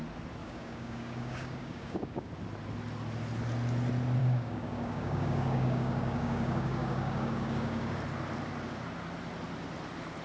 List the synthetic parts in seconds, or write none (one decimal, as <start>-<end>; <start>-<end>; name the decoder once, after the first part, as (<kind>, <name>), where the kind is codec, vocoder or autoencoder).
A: 0.4-2.3 (codec, DAC); 4.2-8.0